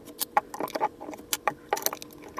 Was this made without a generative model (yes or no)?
yes